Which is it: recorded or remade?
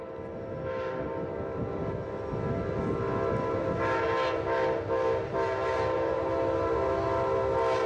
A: recorded